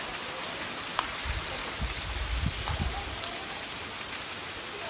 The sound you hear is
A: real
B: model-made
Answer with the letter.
A